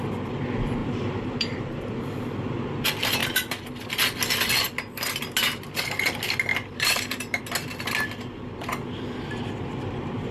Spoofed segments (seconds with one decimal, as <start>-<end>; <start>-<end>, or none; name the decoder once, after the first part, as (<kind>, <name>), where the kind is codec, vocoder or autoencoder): 0.8-1.8 (vocoder, BigVGAN v2); 6.5-7.4

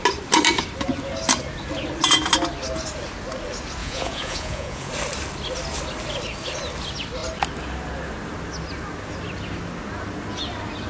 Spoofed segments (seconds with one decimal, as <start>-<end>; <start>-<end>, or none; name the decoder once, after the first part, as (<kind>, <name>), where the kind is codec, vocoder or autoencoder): 3.8-4.9 (vocoder, Vocos)